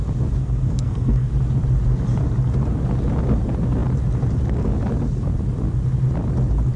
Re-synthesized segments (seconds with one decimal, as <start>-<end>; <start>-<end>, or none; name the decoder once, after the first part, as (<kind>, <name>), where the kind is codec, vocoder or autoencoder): 0.4-1.3 (codec, SNAC)